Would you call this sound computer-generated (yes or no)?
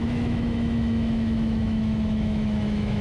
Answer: yes